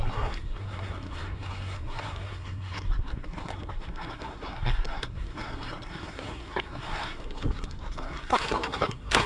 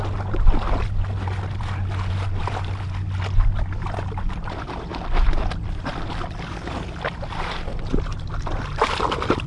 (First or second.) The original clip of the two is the second